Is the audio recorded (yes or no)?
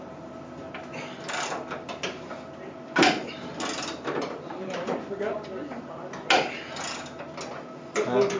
yes